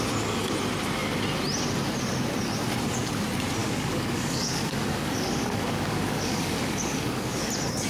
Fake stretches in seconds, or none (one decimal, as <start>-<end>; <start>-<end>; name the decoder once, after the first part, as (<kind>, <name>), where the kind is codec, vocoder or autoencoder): 3.6-7.5 (codec, DAC)